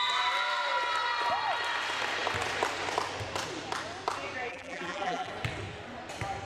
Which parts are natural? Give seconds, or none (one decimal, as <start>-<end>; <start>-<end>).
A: 0.0-4.5; 5.3-6.5